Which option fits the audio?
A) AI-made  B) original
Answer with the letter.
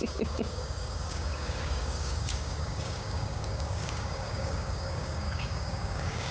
A